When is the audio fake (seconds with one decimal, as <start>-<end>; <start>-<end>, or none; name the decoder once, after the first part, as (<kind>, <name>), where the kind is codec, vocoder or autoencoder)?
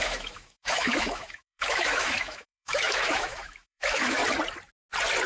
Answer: 0.0-4.2 (autoencoder, DAC-VAE)